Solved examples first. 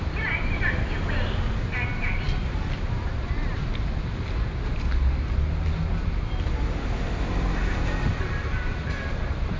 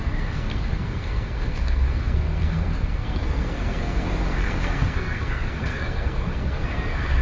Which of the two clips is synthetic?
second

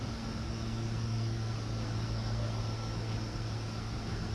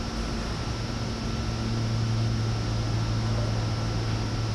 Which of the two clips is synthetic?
first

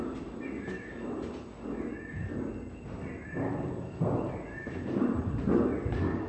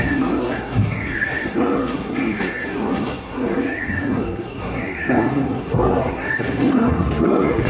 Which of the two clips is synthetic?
second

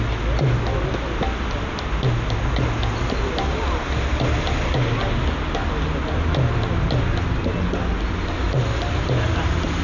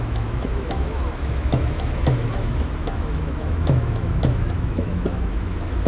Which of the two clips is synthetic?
second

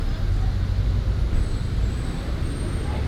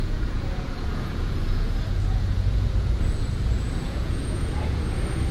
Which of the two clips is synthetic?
second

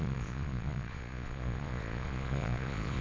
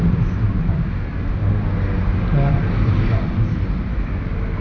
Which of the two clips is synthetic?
first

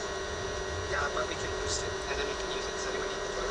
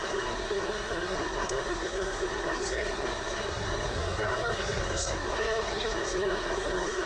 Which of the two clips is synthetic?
second